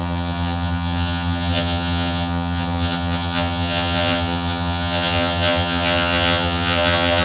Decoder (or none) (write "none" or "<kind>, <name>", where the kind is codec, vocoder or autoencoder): vocoder, HiFi-GAN